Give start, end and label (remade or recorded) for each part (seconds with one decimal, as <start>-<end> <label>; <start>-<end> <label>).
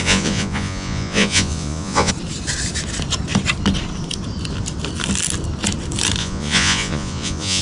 0.0-2.1 remade; 2.1-6.2 recorded; 6.2-7.6 remade